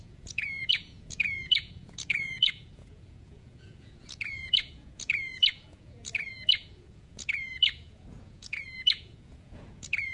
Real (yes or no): no